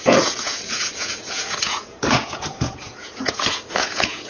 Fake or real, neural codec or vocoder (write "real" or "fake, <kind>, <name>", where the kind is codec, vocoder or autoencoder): fake, vocoder, Vocos